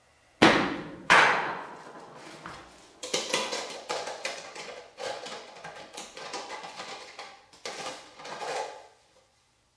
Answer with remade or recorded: remade